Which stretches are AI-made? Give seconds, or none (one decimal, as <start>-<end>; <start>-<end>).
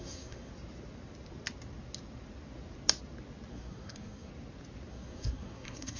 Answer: 0.0-0.5; 3.5-4.3; 4.9-6.0